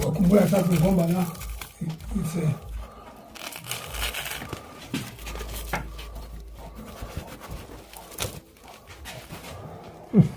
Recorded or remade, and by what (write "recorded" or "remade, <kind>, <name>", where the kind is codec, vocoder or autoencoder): recorded